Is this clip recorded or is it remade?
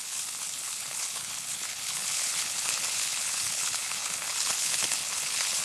remade